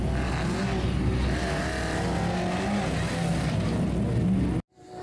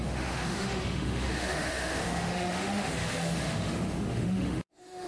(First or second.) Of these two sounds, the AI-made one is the second